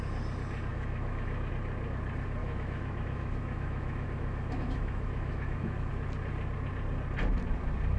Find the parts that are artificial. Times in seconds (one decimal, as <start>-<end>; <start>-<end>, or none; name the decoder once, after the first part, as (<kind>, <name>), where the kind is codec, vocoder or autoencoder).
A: 0.7-1.5 (autoencoder, DAC-VAE); 2.4-5.9